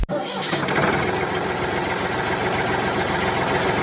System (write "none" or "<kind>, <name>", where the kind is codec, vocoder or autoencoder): none